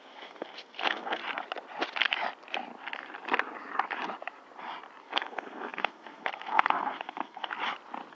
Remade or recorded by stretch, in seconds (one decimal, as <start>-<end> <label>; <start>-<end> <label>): 0.0-1.2 remade; 1.2-5.0 recorded; 5.0-7.5 remade; 7.5-8.1 recorded